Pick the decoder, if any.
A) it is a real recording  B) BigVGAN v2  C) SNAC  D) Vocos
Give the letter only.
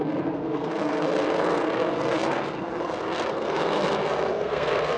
C